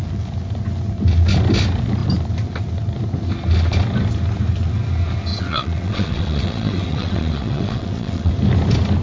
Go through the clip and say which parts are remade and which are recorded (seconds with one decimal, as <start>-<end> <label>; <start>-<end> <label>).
0.0-5.3 recorded; 5.3-8.3 remade; 8.3-9.0 recorded